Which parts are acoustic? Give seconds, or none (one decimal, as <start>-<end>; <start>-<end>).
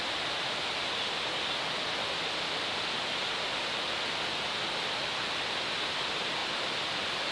0.0-6.4